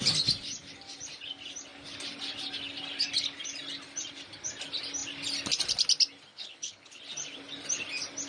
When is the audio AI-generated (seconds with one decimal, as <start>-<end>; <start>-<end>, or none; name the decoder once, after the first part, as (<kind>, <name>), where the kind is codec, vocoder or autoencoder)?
6.3-7.0 (codec, HILCodec)